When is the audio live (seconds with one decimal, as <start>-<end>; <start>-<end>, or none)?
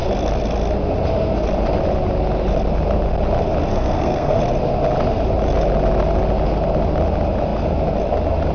0.0-3.7; 4.4-8.5